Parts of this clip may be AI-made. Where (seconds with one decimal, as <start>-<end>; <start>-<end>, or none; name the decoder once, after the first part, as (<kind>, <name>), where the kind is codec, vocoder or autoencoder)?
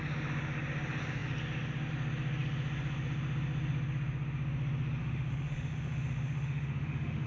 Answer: 5.0-7.3 (autoencoder, DAC-VAE)